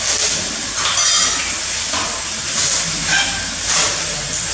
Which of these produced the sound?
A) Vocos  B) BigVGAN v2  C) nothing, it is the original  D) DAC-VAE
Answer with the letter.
C